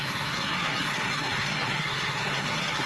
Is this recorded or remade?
remade